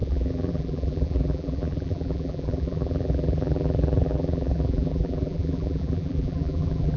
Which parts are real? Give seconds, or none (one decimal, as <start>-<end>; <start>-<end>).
none